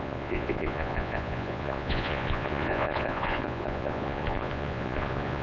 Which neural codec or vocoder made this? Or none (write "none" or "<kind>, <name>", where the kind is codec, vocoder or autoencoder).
vocoder, Vocos